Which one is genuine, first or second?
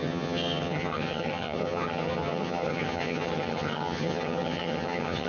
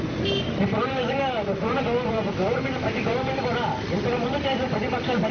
second